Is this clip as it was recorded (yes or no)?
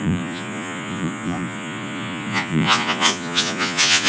no